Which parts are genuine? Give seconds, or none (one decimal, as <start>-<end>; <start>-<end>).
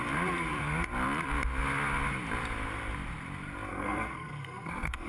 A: 0.0-3.7